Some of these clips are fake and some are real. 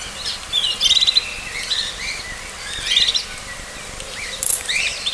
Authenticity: real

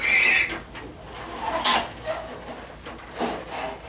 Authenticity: real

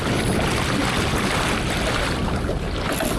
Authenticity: real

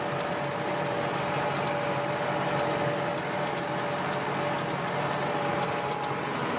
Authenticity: real